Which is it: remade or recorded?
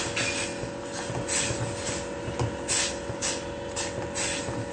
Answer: recorded